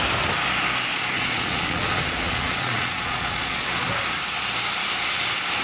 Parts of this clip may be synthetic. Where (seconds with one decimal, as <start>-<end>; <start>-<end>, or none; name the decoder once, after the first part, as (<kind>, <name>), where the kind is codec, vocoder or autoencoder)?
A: 0.9-4.0 (vocoder, Vocos)